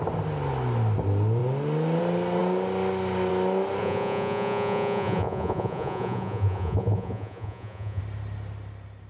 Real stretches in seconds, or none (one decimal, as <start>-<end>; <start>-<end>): 0.0-3.8; 8.0-9.1